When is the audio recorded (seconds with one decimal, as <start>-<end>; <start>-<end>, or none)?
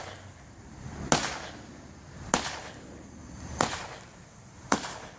0.0-2.6